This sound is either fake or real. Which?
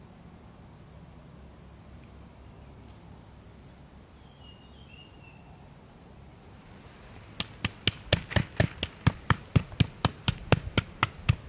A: real